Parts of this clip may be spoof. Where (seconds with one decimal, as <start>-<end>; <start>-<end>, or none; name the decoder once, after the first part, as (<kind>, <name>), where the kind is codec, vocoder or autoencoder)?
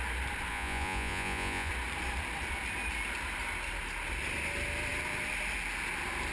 0.5-1.7 (vocoder, Vocos)